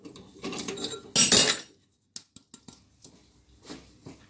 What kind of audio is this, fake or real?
real